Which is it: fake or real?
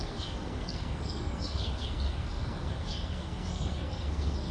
fake